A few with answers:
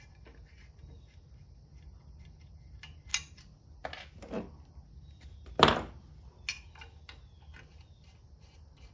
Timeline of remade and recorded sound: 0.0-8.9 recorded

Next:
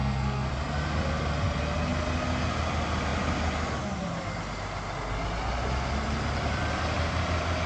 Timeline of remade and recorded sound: 0.0-0.5 remade; 0.5-7.7 recorded

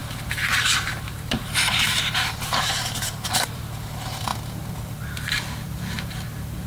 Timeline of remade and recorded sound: 0.0-3.6 remade; 3.6-6.7 recorded

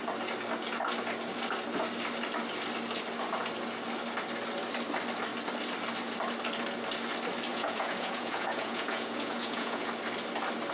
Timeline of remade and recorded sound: 0.0-7.5 recorded; 7.5-9.9 remade; 9.9-10.7 recorded